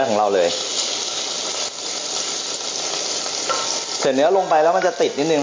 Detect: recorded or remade recorded